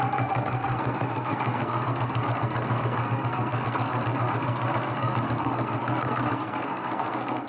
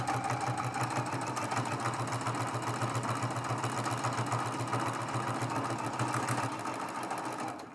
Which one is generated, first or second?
first